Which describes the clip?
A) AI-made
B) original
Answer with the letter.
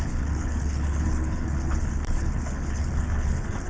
A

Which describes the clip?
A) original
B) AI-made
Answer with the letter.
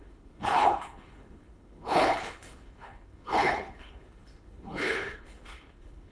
B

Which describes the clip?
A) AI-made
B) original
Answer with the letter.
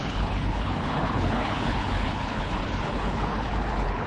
A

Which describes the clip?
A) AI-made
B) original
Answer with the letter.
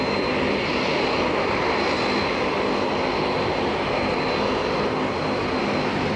B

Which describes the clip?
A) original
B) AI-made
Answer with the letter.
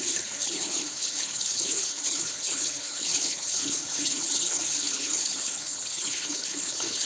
B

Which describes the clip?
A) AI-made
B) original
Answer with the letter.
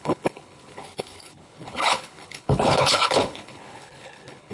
A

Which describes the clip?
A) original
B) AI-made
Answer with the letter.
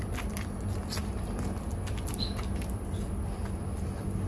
A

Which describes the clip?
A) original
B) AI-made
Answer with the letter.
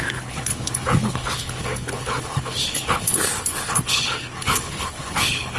B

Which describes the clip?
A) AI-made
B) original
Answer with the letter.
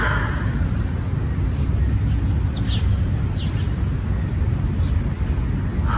B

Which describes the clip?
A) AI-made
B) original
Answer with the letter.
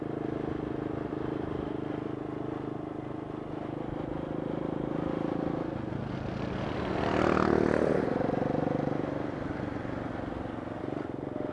B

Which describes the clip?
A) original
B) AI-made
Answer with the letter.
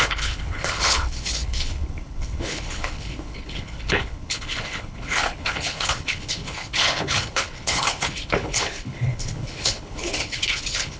B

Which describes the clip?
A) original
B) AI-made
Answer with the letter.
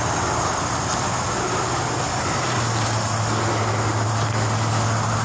A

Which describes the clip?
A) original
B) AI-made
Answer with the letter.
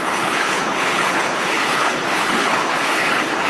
B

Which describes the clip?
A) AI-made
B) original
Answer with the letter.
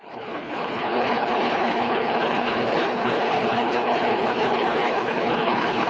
A